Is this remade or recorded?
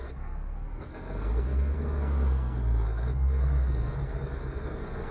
remade